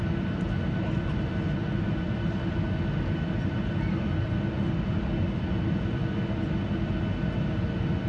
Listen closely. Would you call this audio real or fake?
real